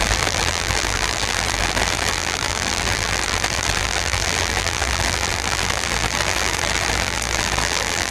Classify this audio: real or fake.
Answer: fake